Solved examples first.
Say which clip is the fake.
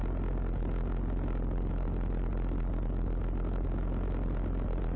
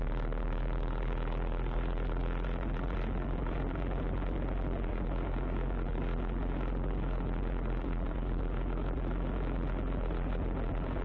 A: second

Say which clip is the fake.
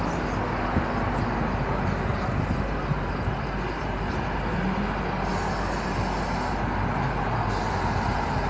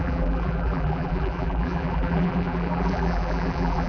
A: second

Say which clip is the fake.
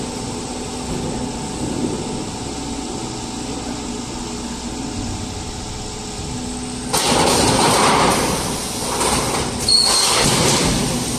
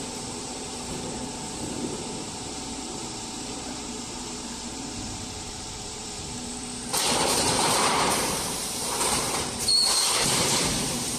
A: second